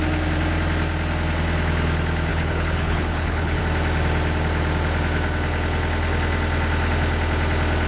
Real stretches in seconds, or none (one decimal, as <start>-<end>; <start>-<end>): 0.0-2.3; 3.6-7.9